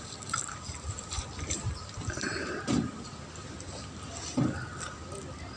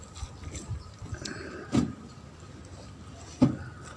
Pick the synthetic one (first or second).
first